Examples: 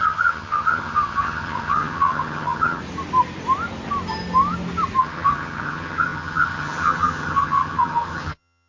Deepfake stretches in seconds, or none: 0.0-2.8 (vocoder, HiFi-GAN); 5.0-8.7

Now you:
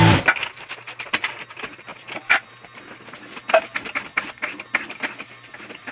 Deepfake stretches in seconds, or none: none

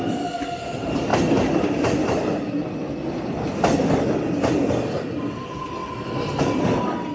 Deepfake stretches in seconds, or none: none

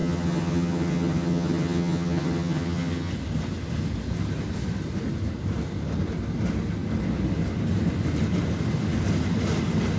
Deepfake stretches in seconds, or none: 0.0-3.1 (vocoder, HiFi-GAN)

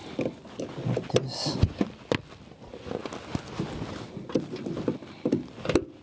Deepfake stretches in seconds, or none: none

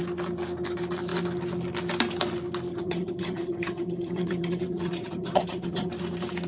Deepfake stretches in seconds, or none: 2.7-5.9 (vocoder, HiFi-GAN)